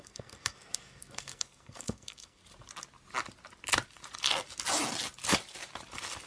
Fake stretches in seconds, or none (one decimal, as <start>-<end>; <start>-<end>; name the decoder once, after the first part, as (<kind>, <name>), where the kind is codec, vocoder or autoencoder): 0.0-2.4 (codec, SNAC)

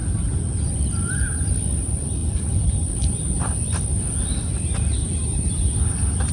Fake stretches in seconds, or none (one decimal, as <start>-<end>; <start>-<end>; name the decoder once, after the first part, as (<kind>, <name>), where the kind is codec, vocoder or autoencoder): 2.2-4.4 (vocoder, BigVGAN v2)